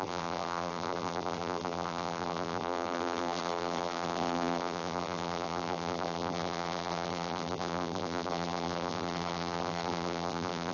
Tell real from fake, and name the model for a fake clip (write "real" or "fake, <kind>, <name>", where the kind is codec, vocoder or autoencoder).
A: fake, vocoder, BigVGAN v2